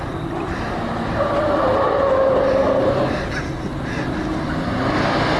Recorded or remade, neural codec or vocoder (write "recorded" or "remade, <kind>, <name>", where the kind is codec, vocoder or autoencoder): recorded